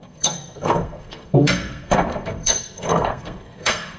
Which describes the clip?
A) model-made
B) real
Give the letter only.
A